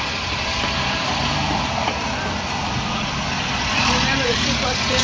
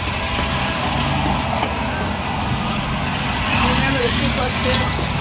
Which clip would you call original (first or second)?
second